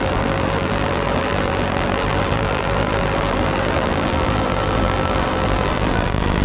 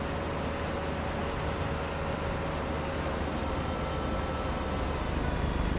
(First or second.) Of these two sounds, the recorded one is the second